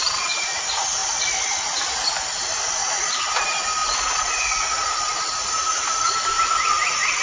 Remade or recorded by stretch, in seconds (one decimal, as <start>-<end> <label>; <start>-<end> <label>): 0.0-2.8 recorded; 2.8-3.4 remade; 3.4-3.8 recorded; 3.8-6.1 remade; 6.1-7.2 recorded